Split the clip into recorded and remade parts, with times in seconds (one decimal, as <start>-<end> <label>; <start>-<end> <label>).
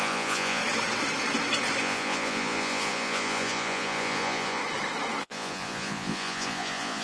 0.0-0.6 remade; 0.6-1.8 recorded; 1.8-4.6 remade; 4.6-5.2 recorded; 5.2-7.0 remade